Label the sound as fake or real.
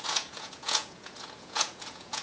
fake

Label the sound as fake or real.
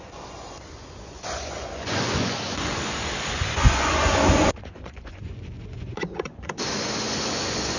fake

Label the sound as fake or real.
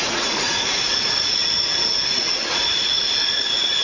fake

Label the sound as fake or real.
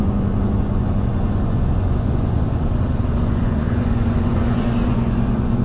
fake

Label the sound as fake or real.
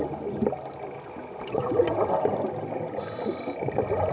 real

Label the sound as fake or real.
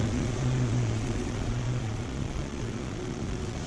fake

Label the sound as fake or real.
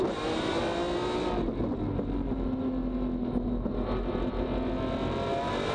real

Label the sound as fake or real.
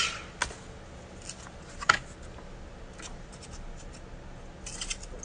real